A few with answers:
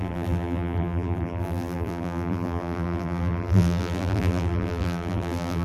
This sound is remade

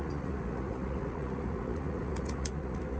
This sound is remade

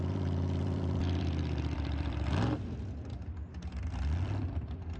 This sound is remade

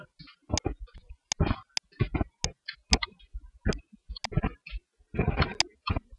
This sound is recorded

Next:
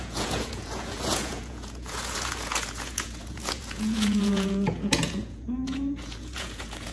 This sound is remade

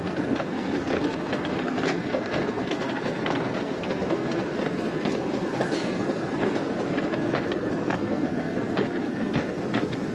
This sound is remade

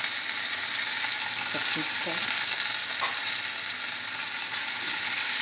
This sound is recorded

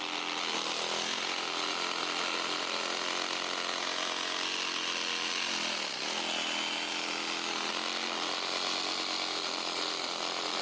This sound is recorded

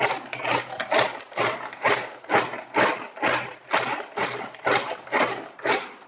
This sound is recorded